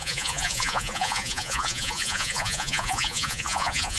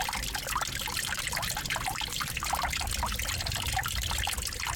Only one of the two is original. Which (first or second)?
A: second